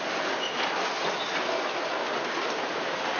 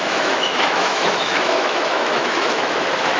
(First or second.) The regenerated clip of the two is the second